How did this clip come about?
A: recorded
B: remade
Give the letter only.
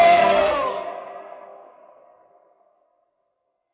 B